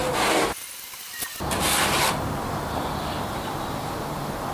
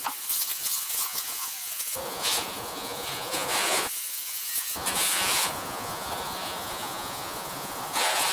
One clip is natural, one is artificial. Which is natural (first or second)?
first